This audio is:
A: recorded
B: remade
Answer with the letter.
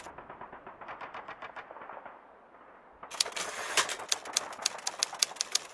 A